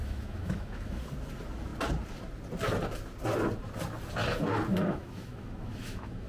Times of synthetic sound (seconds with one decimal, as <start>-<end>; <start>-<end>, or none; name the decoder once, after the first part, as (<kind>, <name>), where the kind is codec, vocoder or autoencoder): 0.0-1.0 (autoencoder, DAC-VAE); 4.7-6.3